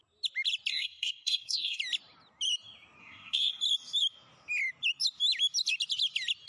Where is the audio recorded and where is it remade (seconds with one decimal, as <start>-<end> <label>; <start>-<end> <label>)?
0.0-0.7 recorded; 0.7-1.8 remade; 1.8-3.0 recorded; 3.0-3.6 remade; 3.6-6.5 recorded